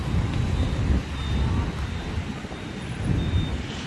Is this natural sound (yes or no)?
yes